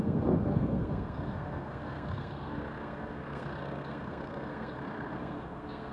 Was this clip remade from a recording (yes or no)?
yes